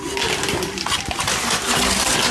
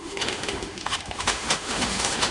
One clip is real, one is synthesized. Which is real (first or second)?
first